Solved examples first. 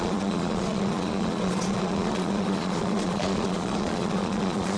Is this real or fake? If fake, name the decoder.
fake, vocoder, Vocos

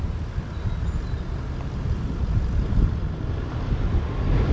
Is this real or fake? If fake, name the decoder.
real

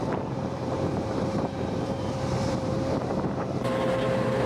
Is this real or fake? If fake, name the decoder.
fake, vocoder, BigVGAN v2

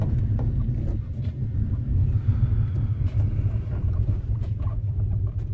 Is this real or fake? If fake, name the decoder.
real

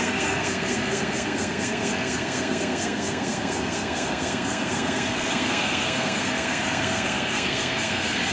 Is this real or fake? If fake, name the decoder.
fake, codec, SNAC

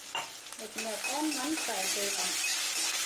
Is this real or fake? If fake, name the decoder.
real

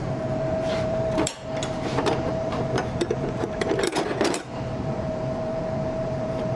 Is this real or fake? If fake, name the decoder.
fake, vocoder, BigVGAN v2